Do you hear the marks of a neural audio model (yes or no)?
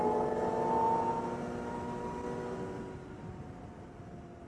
no